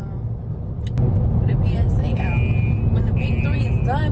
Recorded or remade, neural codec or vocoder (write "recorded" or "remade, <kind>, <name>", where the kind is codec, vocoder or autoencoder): recorded